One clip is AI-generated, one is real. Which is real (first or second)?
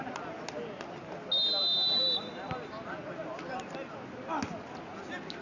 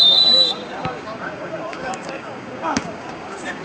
first